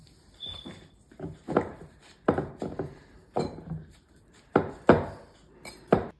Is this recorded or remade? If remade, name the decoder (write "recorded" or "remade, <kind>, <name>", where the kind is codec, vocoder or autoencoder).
remade, vocoder, BigVGAN v2